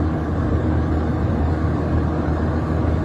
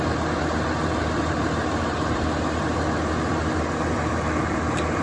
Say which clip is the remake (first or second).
first